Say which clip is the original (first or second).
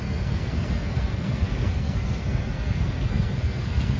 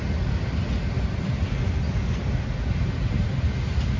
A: second